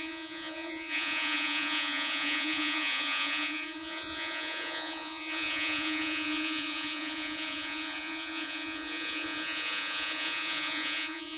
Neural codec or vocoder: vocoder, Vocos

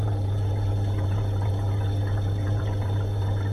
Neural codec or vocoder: vocoder, Vocos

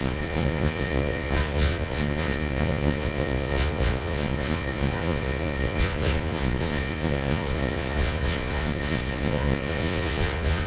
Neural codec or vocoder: vocoder, Vocos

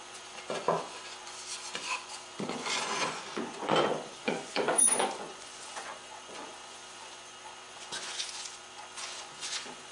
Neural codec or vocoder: vocoder, Vocos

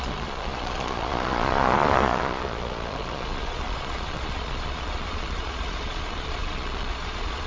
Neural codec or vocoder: vocoder, Vocos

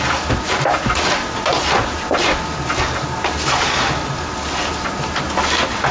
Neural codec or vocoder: none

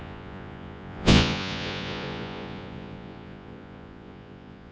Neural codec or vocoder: vocoder, Vocos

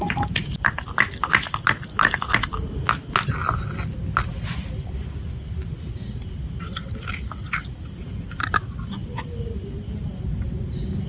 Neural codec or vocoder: none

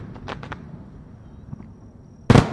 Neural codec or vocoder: none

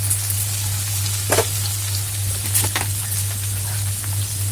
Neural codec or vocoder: none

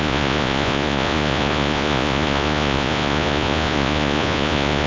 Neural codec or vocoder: vocoder, Vocos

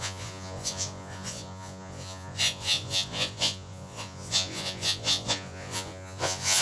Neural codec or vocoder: vocoder, Vocos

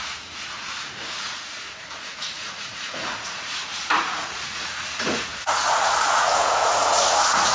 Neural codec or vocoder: vocoder, Vocos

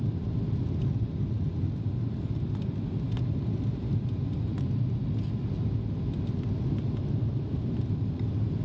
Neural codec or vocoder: none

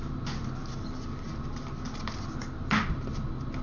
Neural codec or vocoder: none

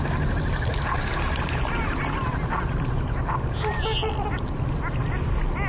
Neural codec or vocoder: none